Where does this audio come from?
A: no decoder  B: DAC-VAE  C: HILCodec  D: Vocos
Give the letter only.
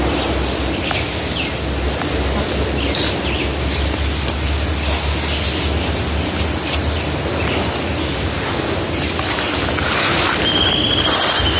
A